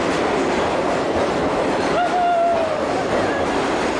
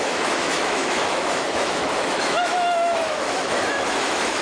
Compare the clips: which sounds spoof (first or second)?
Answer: second